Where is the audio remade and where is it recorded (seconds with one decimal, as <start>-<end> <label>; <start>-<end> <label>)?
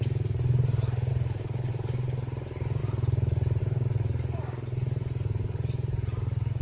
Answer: 0.0-1.1 recorded; 1.1-1.7 remade; 1.7-6.6 recorded